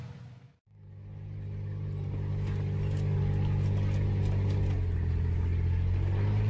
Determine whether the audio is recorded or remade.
recorded